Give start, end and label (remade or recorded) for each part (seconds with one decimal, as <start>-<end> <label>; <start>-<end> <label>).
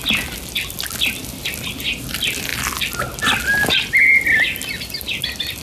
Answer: 0.0-5.6 recorded